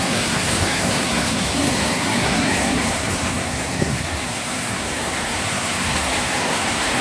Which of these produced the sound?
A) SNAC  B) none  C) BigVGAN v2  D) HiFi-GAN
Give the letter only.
A